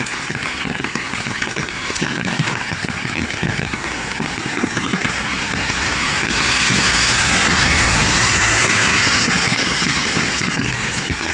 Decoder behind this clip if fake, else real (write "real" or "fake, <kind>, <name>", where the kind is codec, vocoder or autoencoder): fake, codec, SNAC